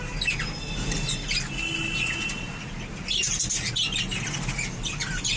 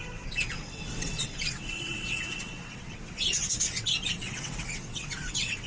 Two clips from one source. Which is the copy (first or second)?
second